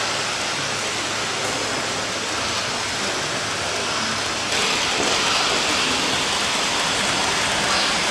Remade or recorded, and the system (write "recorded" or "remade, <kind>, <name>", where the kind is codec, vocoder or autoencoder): recorded